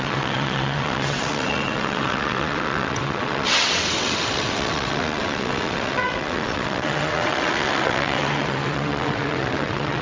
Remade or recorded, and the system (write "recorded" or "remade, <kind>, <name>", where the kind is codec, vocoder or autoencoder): remade, vocoder, WaveNeXt